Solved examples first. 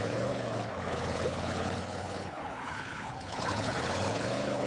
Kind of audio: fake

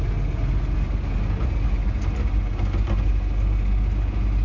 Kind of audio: real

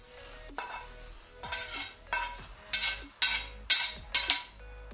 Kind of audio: real